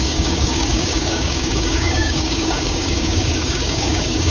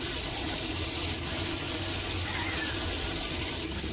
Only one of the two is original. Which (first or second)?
second